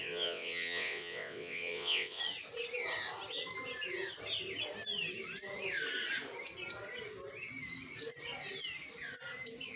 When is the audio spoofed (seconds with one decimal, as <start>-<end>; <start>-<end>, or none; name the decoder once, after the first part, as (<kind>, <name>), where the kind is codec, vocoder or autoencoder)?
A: 0.0-2.2 (vocoder, WaveNeXt)